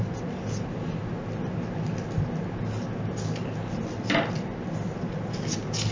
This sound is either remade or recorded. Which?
recorded